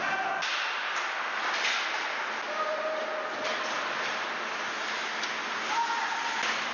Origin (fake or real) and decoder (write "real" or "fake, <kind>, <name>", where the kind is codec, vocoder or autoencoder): real